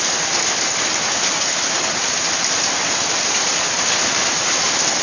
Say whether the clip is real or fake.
real